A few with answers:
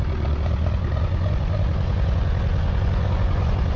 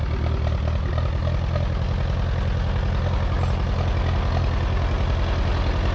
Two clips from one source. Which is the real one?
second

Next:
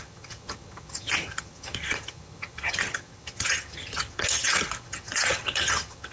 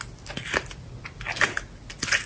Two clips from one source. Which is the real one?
second